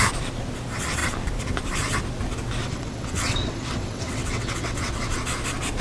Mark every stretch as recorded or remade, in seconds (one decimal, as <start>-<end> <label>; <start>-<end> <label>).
0.0-2.6 recorded; 2.6-5.2 remade; 5.2-5.8 recorded